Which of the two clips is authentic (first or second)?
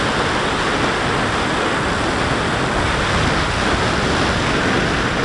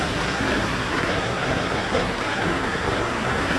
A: first